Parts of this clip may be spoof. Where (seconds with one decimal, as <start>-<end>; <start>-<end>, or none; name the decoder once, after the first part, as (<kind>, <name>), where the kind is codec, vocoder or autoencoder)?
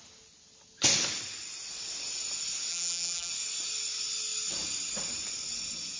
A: 2.7-3.3 (vocoder, BigVGAN v2)